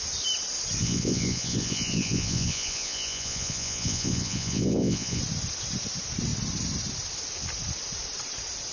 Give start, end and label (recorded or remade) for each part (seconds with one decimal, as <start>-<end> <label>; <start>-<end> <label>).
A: 0.0-0.8 recorded; 0.8-5.2 remade; 5.2-8.7 recorded